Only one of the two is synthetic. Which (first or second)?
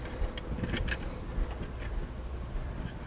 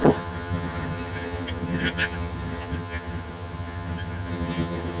second